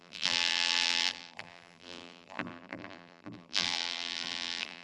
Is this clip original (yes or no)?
no